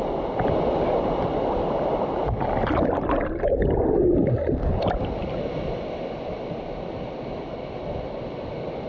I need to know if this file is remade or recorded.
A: recorded